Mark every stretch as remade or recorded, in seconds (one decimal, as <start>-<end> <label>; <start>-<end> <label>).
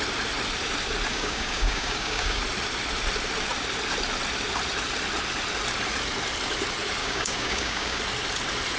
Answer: 0.0-1.1 recorded; 1.1-2.4 remade; 2.4-7.0 recorded; 7.0-8.0 remade; 8.0-8.8 recorded